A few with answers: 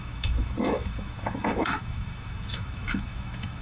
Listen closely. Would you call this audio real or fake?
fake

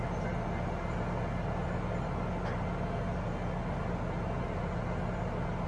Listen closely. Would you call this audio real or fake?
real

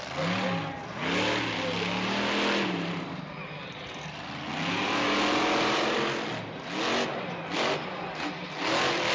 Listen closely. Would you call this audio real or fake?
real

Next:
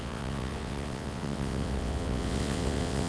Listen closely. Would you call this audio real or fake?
fake